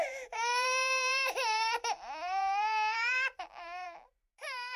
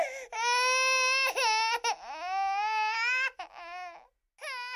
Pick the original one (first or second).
second